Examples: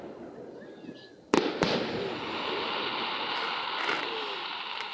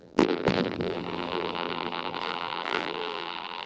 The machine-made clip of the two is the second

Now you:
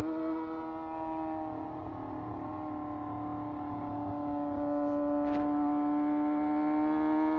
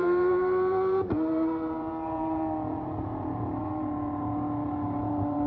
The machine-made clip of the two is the second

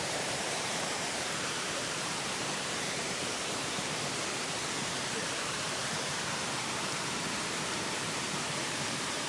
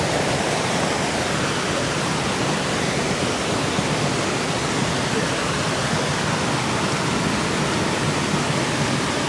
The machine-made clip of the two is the first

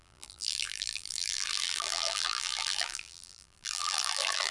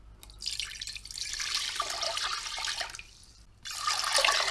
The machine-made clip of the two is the first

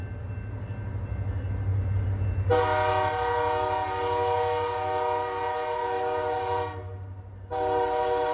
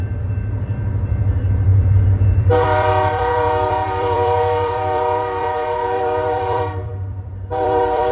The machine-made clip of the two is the second